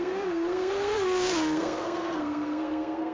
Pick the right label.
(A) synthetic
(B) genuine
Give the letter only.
A